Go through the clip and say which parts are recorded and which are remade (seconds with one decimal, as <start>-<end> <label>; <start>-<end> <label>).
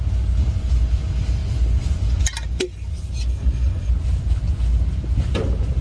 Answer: 0.0-3.3 recorded; 3.3-3.9 remade; 3.9-5.8 recorded